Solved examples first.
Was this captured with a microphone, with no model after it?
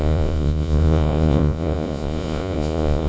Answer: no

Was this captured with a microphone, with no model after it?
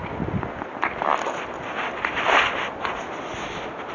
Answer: yes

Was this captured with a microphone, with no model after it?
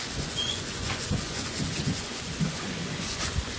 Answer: no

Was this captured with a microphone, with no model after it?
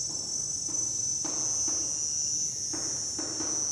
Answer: yes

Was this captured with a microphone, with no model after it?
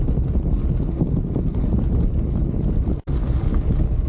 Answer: yes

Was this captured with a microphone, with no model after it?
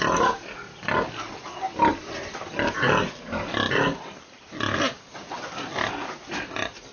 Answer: yes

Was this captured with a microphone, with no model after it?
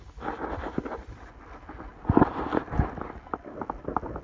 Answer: yes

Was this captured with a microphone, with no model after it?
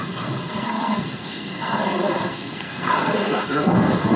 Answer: no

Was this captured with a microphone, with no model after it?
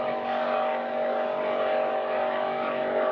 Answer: no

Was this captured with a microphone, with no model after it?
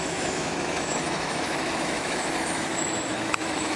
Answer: no